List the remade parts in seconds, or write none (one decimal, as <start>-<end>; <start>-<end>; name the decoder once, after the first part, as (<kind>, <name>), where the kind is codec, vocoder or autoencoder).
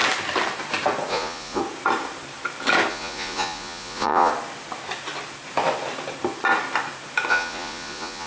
1.1-1.6 (vocoder, Vocos); 2.9-4.3; 7.3-8.3